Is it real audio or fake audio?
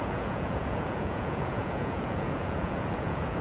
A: fake